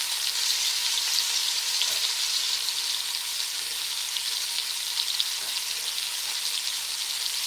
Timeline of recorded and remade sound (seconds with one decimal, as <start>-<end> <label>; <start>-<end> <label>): 0.0-7.5 recorded